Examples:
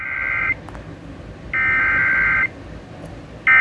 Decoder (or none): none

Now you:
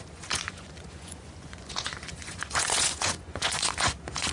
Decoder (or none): vocoder, Vocos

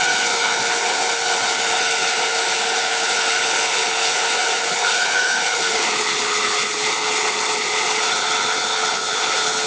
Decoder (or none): codec, HILCodec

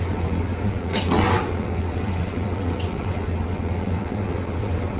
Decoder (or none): vocoder, WaveNeXt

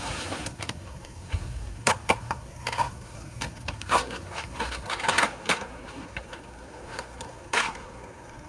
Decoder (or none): codec, SNAC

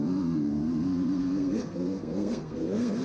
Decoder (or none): codec, SNAC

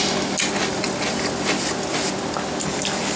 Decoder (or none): none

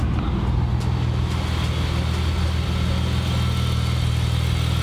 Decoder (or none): none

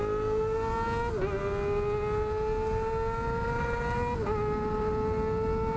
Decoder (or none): none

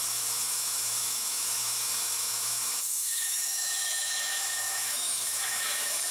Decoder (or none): autoencoder, DAC-VAE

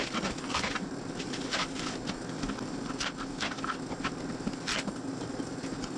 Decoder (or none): none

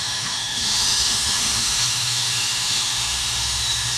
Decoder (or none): autoencoder, DAC-VAE